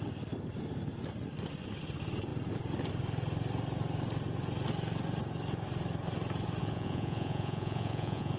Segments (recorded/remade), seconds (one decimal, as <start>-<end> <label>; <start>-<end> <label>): 0.0-6.6 recorded; 6.6-8.4 remade